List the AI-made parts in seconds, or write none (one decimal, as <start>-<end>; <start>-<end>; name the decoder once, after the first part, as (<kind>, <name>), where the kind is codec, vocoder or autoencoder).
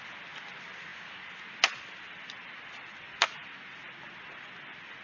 none